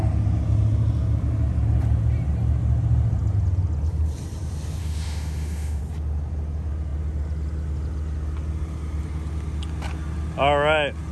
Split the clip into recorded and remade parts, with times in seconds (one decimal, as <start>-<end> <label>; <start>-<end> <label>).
0.0-4.8 recorded; 4.8-5.8 remade; 5.8-11.1 recorded